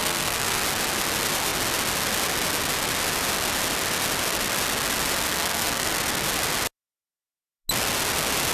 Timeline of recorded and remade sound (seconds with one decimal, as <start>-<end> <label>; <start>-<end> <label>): 0.0-0.6 remade; 0.6-5.3 recorded; 5.3-5.9 remade; 5.9-8.5 recorded